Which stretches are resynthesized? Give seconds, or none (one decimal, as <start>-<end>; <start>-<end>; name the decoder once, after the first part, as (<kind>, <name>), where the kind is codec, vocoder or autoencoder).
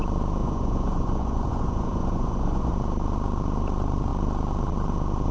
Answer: 0.4-2.7 (vocoder, Vocos)